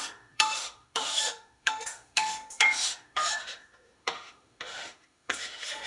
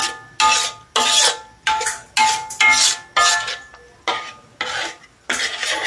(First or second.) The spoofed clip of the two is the first